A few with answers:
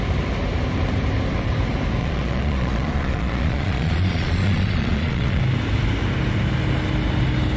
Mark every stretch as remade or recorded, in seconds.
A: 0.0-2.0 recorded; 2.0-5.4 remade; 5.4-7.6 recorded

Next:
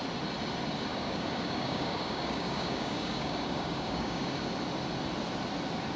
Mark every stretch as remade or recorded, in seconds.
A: 0.0-0.9 recorded; 0.9-4.4 remade; 4.4-6.0 recorded

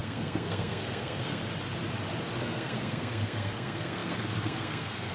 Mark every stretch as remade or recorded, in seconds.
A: 0.0-1.4 remade; 1.4-2.4 recorded; 2.4-5.1 remade